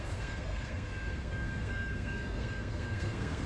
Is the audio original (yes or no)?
no